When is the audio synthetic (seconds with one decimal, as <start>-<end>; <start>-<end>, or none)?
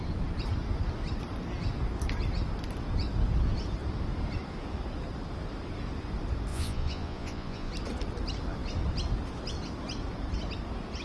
6.5-7.7